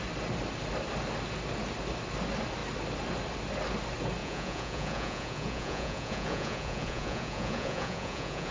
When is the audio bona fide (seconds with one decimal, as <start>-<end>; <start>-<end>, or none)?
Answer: 0.0-4.2